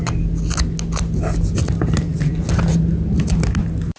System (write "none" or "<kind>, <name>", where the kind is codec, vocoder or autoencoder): none